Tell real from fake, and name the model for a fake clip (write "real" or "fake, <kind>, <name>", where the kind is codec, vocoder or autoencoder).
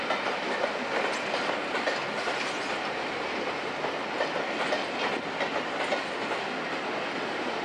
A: real